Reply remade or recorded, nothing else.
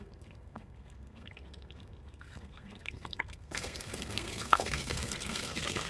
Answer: remade